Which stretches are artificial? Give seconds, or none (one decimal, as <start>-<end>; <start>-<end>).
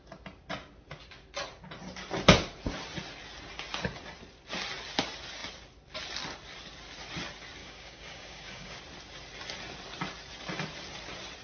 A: 7.6-8.8